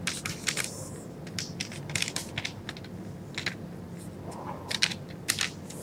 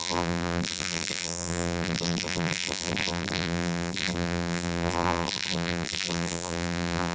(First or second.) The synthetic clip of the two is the second